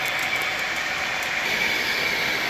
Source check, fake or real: real